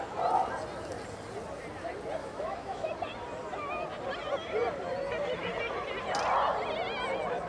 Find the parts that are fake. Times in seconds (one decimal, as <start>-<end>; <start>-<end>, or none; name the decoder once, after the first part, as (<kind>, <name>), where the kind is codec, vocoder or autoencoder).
2.2-2.9 (autoencoder, DAC-VAE)